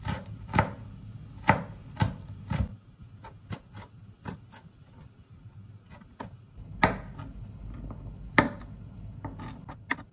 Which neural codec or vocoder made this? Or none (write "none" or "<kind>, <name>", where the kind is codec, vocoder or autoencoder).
none